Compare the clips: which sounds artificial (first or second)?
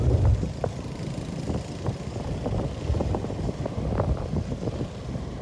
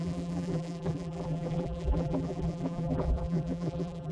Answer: second